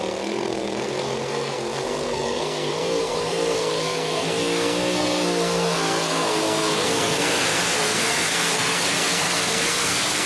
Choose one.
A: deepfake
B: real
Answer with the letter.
A